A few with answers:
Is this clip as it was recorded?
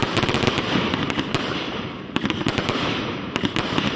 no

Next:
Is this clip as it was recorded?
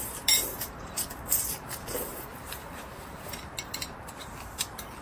no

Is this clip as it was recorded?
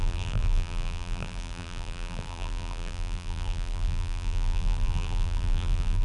no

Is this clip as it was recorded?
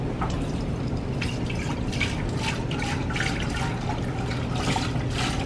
yes